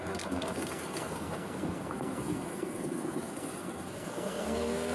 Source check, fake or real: fake